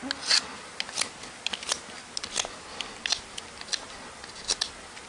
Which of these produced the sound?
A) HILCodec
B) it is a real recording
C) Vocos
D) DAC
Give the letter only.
B